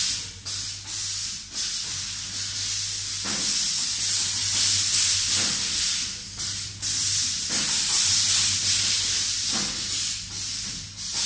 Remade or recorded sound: recorded